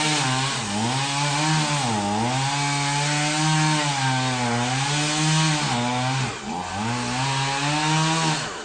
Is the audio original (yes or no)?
yes